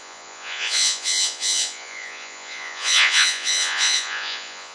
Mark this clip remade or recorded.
remade